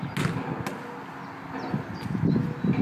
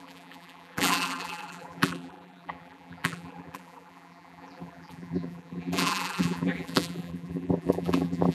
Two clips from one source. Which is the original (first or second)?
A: first